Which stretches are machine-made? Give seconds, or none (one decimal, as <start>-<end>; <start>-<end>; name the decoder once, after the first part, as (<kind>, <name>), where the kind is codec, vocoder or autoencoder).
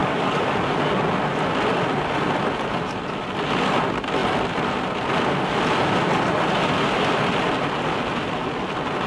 0.0-1.0 (codec, DAC)